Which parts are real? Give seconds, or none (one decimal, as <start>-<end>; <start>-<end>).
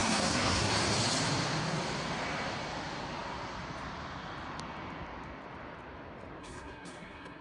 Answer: 0.7-6.4